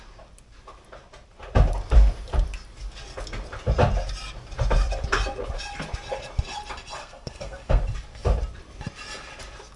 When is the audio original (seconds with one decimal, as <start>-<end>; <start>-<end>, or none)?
0.0-7.0; 7.8-9.8